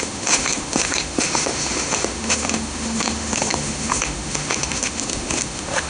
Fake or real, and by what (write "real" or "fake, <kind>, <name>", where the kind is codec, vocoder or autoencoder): fake, autoencoder, DAC-VAE